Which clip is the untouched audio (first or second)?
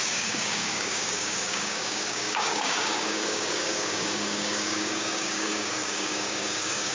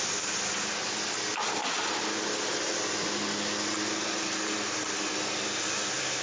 second